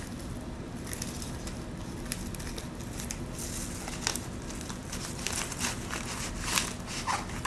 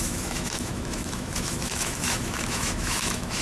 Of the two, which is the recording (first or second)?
first